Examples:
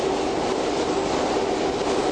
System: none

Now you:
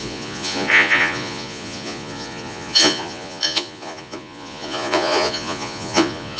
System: vocoder, Vocos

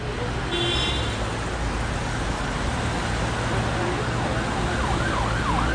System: none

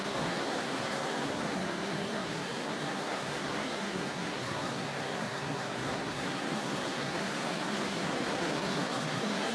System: codec, SNAC